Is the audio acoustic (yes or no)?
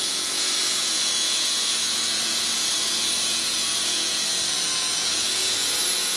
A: no